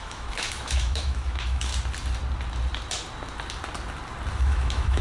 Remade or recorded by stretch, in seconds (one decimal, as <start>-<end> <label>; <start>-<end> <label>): 0.0-1.7 remade; 1.7-4.3 recorded; 4.3-5.0 remade